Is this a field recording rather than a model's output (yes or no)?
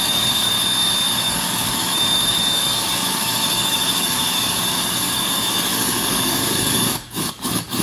no